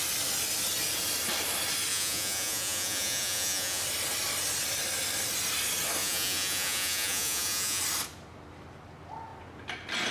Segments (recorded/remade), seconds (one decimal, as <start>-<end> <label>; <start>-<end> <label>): 0.0-1.9 recorded; 1.9-3.8 remade; 3.8-6.0 recorded; 6.0-7.8 remade; 7.8-10.1 recorded